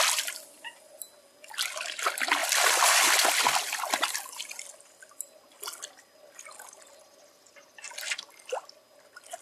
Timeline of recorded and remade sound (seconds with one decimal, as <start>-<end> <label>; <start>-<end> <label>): 0.0-2.4 recorded; 2.4-3.4 remade; 3.4-9.4 recorded

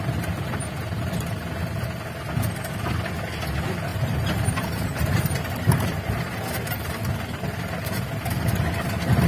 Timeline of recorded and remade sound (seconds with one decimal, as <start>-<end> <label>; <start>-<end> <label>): 0.0-3.9 recorded; 3.9-6.0 remade; 6.0-9.3 recorded

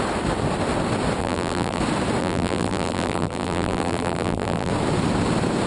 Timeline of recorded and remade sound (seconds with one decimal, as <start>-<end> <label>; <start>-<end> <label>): 0.0-1.2 recorded; 1.2-1.8 remade; 1.8-2.2 recorded; 2.2-4.7 remade; 4.7-5.7 recorded